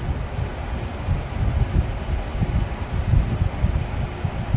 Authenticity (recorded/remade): recorded